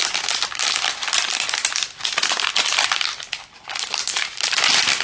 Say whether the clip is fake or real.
fake